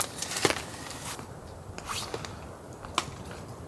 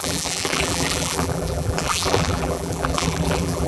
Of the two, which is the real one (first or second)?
first